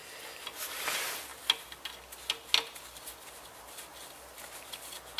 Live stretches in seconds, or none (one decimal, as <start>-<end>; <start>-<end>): 0.0-5.2